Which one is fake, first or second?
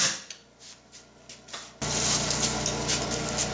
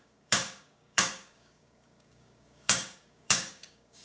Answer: second